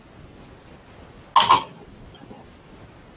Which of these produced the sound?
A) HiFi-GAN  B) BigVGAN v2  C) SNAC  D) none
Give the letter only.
D